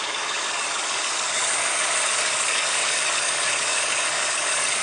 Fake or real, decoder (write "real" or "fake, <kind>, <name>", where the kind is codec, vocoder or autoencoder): fake, codec, DAC